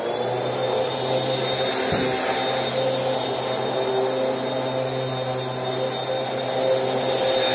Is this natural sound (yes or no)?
yes